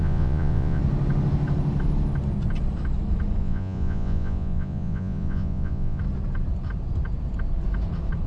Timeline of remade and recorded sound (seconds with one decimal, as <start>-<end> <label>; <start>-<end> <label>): 0.0-0.8 remade; 0.8-3.4 recorded; 3.4-6.0 remade; 6.0-8.3 recorded